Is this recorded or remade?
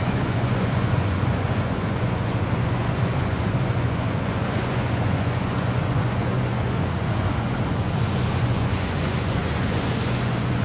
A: remade